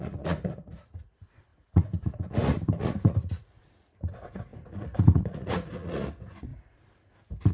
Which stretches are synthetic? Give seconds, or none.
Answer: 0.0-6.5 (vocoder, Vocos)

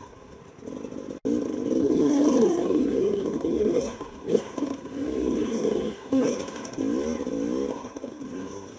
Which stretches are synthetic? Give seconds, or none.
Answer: 0.0-0.4 (codec, SNAC); 1.8-6.8; 7.7-8.8

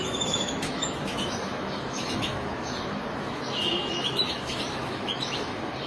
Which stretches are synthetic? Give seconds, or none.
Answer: 0.0-5.9 (autoencoder, DAC-VAE)

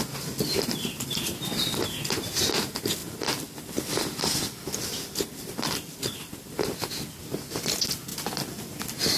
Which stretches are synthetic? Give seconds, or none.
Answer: 3.0-6.9 (vocoder, BigVGAN v2); 8.1-9.2

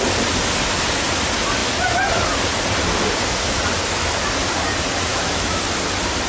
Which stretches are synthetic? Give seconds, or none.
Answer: 5.1-5.6 (autoencoder, DAC-VAE)

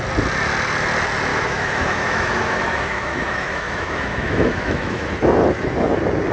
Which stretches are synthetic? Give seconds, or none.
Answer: 1.3-5.1 (autoencoder, DAC-VAE)

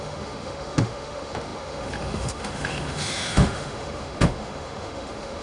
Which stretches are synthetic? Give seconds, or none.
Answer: 0.0-5.4 (autoencoder, DAC-VAE)

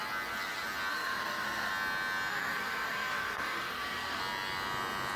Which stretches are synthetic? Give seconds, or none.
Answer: 0.9-1.7 (codec, SNAC); 2.3-4.2